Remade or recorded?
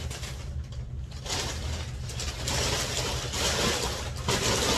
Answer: recorded